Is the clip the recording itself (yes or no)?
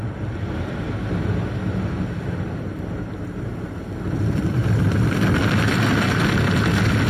yes